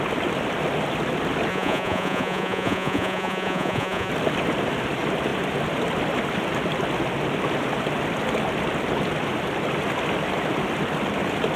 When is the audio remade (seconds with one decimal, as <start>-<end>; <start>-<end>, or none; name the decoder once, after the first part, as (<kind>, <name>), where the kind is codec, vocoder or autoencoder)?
1.5-4.1 (vocoder, Vocos)